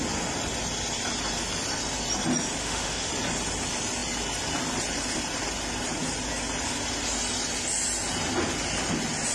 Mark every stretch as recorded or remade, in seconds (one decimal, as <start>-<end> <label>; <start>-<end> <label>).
0.0-2.6 recorded; 2.6-3.1 remade; 3.1-9.3 recorded